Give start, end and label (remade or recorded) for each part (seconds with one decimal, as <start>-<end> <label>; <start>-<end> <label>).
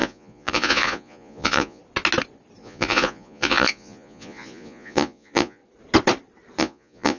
0.0-1.8 remade; 1.8-2.6 recorded; 2.6-5.6 remade; 5.6-6.6 recorded; 6.6-7.2 remade